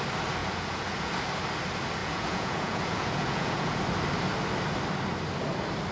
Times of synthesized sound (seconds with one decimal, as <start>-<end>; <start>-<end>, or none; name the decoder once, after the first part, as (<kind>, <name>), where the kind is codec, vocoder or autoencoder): 0.4-1.1 (vocoder, Vocos); 2.0-3.8